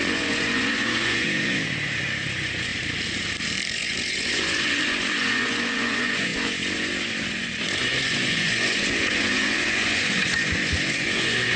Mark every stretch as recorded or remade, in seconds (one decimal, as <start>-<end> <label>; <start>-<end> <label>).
0.0-2.7 remade; 2.7-3.7 recorded; 3.7-11.6 remade